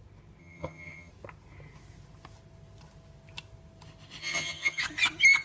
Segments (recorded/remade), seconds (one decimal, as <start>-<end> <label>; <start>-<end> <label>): 0.0-0.4 recorded; 0.4-1.1 remade; 1.1-4.2 recorded; 4.2-4.8 remade; 4.8-5.4 recorded